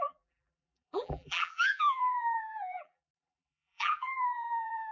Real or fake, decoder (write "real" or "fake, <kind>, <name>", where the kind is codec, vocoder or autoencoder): fake, vocoder, BigVGAN v2